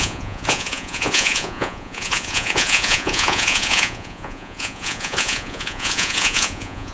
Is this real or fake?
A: fake